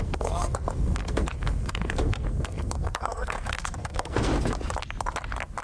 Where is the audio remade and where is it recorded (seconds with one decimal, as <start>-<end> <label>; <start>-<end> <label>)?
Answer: 0.0-4.3 remade; 4.3-5.6 recorded